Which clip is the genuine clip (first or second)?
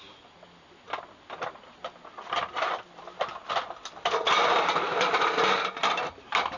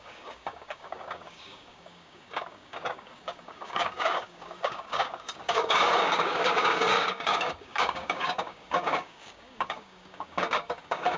first